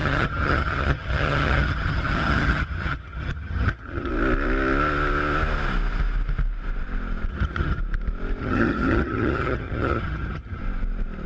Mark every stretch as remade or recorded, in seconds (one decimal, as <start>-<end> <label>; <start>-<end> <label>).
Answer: 0.0-4.1 remade; 4.1-7.3 recorded; 7.3-7.8 remade; 7.8-8.4 recorded; 8.4-10.6 remade; 10.6-11.3 recorded

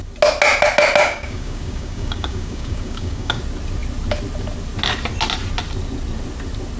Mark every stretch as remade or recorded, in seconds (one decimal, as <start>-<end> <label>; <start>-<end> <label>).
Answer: 0.0-1.0 recorded; 1.0-3.4 remade; 3.4-6.8 recorded

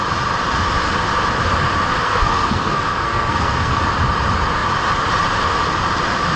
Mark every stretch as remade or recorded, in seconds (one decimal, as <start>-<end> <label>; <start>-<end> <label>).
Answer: 0.0-2.0 recorded; 2.0-3.8 remade; 3.8-6.4 recorded

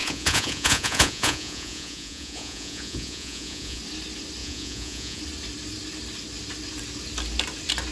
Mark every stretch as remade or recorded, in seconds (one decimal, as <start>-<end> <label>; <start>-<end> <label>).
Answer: 0.0-3.8 remade; 3.8-4.4 recorded; 4.4-5.2 remade; 5.2-7.9 recorded